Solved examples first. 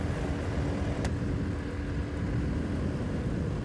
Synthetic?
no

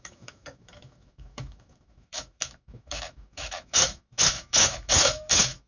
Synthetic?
yes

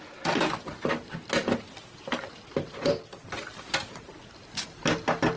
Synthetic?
no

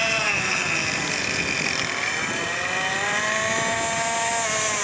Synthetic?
no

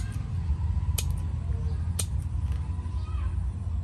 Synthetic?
no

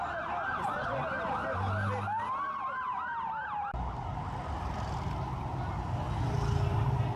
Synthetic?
no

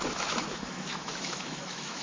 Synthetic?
yes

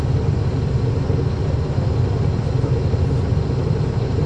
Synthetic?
no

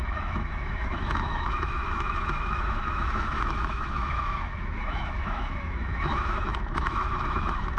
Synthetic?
yes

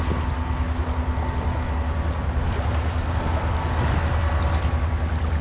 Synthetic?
no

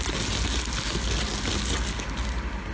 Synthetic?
no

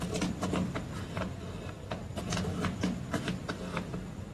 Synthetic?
no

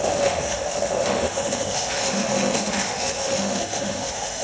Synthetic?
yes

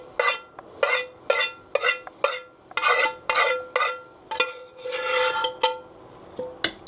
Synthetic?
no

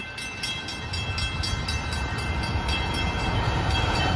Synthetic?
no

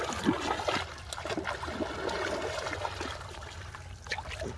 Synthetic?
no